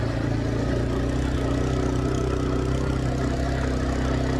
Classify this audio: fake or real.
real